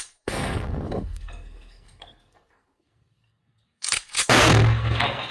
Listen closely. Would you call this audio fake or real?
fake